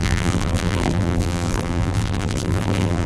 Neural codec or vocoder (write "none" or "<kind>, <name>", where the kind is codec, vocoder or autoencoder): vocoder, BigVGAN v2